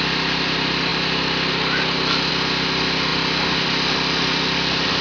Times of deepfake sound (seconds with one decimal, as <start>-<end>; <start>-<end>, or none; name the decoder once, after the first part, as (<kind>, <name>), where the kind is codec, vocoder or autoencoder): none

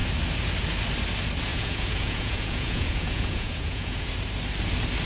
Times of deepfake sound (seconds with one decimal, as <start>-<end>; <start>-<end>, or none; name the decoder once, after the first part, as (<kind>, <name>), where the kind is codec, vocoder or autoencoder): 1.5-4.1 (vocoder, Vocos)

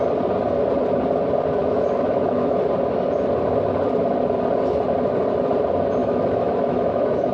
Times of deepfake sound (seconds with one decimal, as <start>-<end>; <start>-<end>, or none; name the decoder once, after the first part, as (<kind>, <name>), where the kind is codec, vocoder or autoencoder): 1.6-2.6 (autoencoder, DAC-VAE); 6.0-7.3

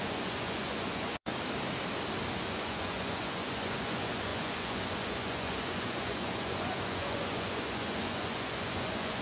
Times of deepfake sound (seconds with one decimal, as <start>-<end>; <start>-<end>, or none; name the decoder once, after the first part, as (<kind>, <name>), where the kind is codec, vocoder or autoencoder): 0.0-1.3 (vocoder, Vocos); 2.3-9.2

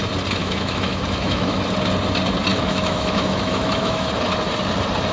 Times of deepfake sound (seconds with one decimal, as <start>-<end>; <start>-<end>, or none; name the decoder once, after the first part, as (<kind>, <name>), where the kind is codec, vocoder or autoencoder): 0.4-1.6 (autoencoder, DAC-VAE); 2.5-4.1

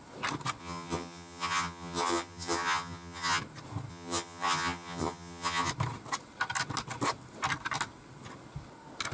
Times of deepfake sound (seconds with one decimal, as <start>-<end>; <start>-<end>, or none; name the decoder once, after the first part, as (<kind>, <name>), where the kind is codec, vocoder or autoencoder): 0.6-3.4 (vocoder, HiFi-GAN); 3.9-5.7